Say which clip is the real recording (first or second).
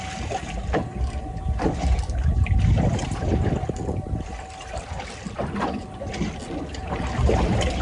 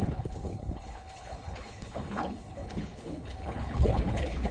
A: first